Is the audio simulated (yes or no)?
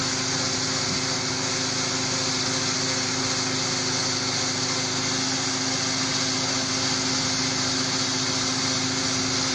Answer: no